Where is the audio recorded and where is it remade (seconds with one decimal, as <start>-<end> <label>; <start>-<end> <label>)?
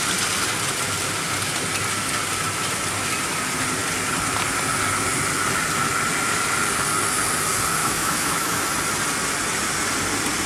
0.0-7.8 recorded; 7.8-8.6 remade; 8.6-10.5 recorded